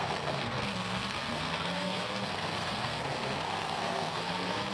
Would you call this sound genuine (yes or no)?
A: no